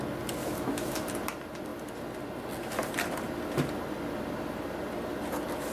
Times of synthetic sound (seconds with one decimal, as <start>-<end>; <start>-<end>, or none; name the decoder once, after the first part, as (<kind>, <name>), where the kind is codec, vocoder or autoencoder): 0.4-1.0 (autoencoder, DAC-VAE)